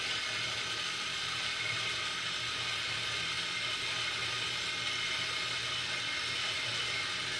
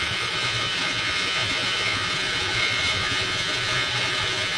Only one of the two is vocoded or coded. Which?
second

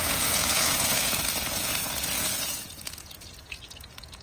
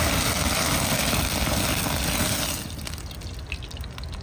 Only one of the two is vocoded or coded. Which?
first